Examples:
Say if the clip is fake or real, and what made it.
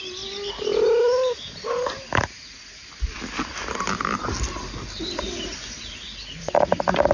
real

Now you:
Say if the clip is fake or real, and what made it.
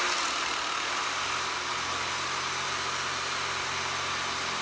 real